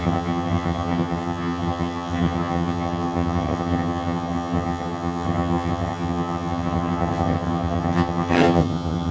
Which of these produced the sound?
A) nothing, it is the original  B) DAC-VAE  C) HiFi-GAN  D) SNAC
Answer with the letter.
C